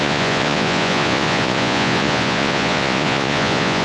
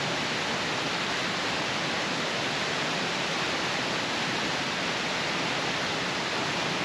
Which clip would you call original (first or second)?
second